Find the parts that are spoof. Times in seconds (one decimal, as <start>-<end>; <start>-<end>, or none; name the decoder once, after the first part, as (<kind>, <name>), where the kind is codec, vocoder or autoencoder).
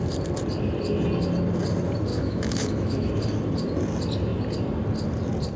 2.1-3.1 (autoencoder, DAC-VAE)